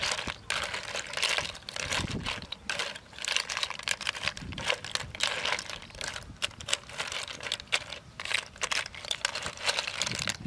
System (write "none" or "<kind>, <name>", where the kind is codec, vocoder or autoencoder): none